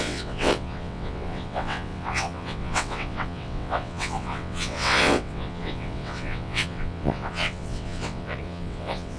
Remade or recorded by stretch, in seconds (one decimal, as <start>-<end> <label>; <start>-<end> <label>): 0.0-9.2 remade